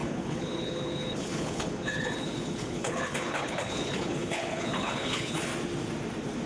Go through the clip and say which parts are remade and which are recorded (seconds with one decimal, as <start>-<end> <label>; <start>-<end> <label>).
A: 0.0-5.5 remade; 5.5-6.5 recorded

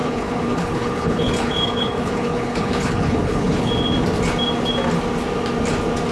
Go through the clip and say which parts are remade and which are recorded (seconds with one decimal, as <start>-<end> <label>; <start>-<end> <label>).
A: 0.0-3.7 remade; 3.7-6.1 recorded

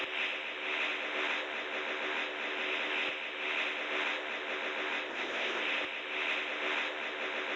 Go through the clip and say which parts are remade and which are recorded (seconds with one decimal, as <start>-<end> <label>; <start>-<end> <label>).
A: 0.0-5.1 recorded; 5.1-5.6 remade; 5.6-7.6 recorded

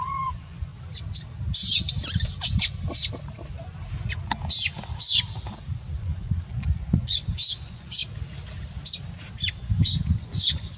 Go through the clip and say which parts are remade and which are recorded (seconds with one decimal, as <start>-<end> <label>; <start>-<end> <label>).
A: 0.0-0.7 remade; 0.7-5.9 recorded; 5.9-8.0 remade; 8.0-9.5 recorded; 9.5-10.8 remade

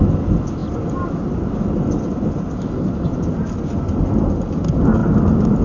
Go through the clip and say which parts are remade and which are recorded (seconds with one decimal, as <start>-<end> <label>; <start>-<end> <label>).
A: 0.0-5.6 recorded

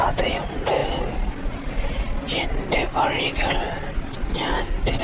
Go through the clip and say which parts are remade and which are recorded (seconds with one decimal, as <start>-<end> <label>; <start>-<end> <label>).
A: 0.0-5.0 recorded

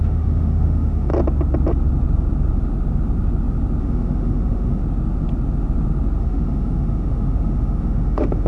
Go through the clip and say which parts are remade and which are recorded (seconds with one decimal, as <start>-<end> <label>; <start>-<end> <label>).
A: 0.0-1.1 remade; 1.1-3.8 recorded; 3.8-4.8 remade; 4.8-6.2 recorded; 6.2-8.5 remade